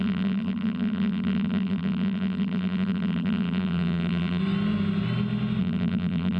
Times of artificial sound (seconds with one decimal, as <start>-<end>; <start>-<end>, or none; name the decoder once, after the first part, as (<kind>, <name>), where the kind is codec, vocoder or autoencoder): 0.0-4.4 (vocoder, BigVGAN v2); 5.6-6.4